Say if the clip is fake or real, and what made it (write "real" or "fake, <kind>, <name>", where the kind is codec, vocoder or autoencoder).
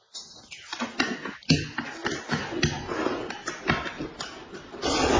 real